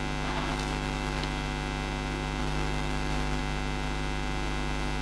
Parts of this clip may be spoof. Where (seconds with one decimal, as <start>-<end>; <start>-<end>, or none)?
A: 0.5-1.2; 2.4-3.4